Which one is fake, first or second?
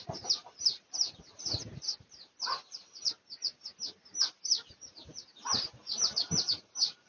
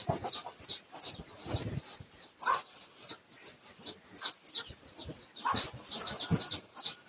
first